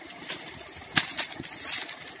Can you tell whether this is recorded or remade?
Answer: recorded